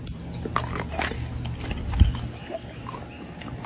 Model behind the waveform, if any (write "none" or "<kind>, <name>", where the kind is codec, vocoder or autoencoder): none